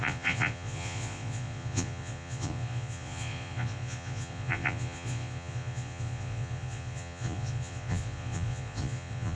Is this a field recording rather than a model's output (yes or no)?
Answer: no